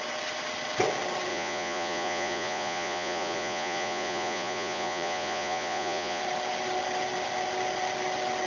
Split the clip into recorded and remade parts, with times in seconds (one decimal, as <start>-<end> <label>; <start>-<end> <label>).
0.0-1.3 recorded; 1.3-6.2 remade; 6.2-8.5 recorded